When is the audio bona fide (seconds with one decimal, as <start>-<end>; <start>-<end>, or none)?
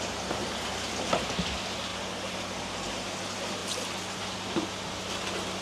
0.0-5.6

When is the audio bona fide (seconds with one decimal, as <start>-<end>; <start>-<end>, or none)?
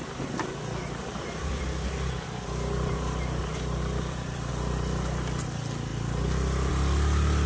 4.5-5.9; 6.7-7.5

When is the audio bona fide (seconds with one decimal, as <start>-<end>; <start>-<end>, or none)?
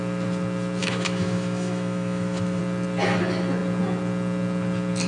0.0-0.8; 2.6-5.1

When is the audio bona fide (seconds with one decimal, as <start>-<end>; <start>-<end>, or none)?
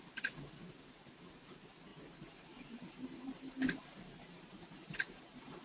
0.0-1.9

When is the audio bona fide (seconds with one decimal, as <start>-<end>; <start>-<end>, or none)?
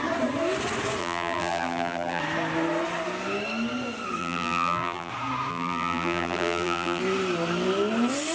0.0-1.0; 2.2-4.2; 5.1-5.5; 7.0-8.3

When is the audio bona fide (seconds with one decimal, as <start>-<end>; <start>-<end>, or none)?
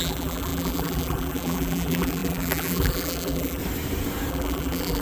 3.6-4.3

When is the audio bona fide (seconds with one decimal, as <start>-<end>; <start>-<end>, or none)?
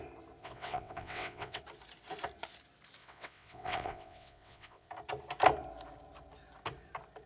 0.0-0.4; 1.6-3.0; 4.9-7.3